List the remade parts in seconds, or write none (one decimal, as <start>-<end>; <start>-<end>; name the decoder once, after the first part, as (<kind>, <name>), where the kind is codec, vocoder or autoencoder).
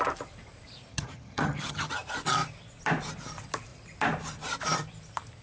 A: 0.9-1.9 (vocoder, HiFi-GAN)